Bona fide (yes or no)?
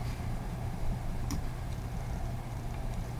no